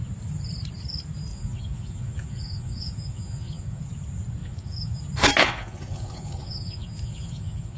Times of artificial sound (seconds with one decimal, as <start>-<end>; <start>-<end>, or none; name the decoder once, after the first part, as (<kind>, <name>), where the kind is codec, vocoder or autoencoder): 1.3-3.8 (vocoder, Vocos); 4.4-5.0; 5.4-7.8